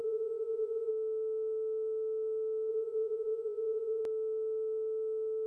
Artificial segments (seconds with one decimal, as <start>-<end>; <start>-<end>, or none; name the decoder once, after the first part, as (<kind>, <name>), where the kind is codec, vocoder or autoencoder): 0.0-0.9 (vocoder, Vocos); 2.7-4.0